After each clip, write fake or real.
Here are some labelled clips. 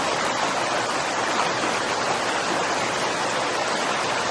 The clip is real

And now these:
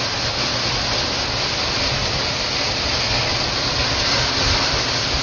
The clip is real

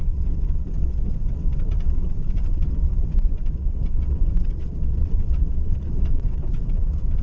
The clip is fake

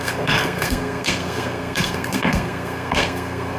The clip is fake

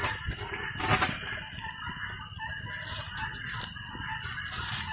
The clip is real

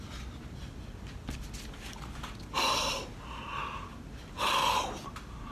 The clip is real